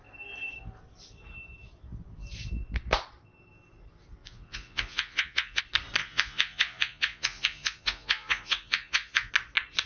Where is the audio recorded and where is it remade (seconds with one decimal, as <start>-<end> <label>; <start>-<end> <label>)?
0.0-4.2 recorded; 4.2-5.6 remade; 5.6-6.0 recorded; 6.0-9.3 remade; 9.3-9.9 recorded